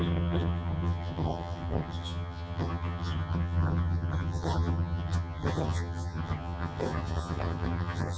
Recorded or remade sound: remade